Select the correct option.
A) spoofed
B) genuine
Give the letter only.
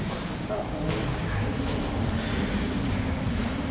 B